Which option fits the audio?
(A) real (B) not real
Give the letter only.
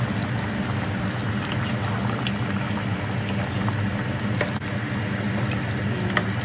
A